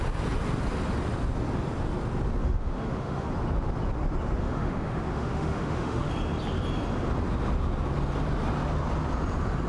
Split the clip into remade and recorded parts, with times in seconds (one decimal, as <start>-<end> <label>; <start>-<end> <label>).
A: 0.0-2.4 recorded; 2.4-3.3 remade; 3.3-4.4 recorded; 4.4-6.1 remade; 6.1-9.7 recorded